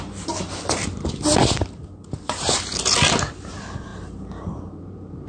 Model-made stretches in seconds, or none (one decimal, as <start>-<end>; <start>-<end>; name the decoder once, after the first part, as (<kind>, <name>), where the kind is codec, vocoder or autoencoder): 3.9-5.3 (vocoder, BigVGAN v2)